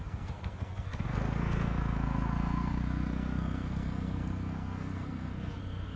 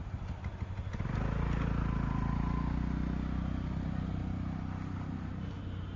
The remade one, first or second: first